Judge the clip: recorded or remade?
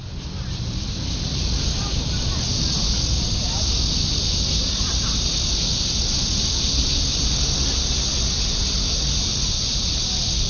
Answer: recorded